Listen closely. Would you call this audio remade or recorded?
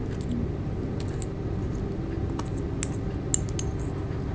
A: recorded